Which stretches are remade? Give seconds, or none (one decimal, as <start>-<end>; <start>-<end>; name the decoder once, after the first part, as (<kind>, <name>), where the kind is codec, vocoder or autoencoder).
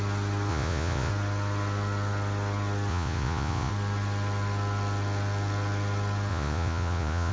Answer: 0.5-1.1 (vocoder, Vocos); 2.9-3.7; 6.3-7.3